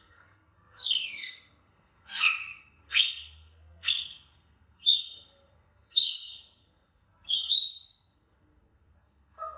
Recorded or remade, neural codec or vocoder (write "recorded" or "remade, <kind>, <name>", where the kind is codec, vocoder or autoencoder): remade, codec, SNAC